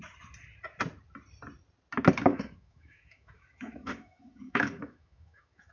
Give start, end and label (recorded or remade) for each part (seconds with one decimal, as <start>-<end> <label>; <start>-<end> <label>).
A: 0.0-2.3 recorded; 2.3-5.7 remade